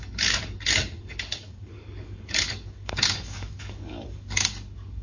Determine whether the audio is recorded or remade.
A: remade